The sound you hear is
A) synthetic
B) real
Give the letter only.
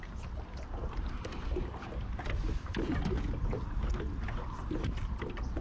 B